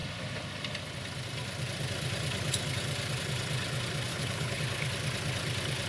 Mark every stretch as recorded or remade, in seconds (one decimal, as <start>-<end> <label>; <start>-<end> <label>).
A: 0.0-4.1 recorded; 4.1-4.6 remade; 4.6-5.9 recorded

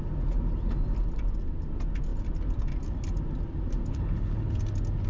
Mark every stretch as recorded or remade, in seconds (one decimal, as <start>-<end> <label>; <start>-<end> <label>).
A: 0.0-3.9 recorded; 3.9-4.5 remade; 4.5-5.1 recorded